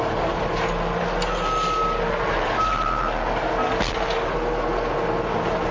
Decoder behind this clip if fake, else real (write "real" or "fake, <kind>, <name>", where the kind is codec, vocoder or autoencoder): real